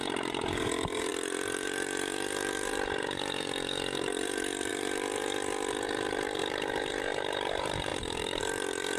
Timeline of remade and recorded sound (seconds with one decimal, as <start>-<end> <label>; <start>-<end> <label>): 0.0-9.0 remade